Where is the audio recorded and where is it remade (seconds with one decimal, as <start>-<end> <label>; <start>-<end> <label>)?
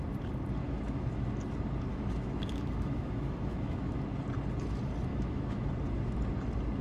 0.0-0.6 recorded; 0.6-1.3 remade; 1.3-1.9 recorded; 1.9-4.0 remade; 4.0-5.1 recorded; 5.1-5.7 remade; 5.7-6.8 recorded